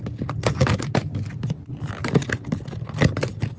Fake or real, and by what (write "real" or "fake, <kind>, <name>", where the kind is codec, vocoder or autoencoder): real